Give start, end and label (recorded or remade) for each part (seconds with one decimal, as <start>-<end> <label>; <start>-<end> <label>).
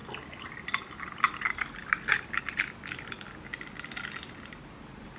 0.0-5.2 recorded